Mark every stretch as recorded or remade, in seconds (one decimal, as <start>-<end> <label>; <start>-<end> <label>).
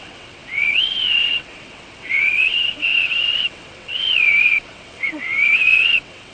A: 0.0-6.3 remade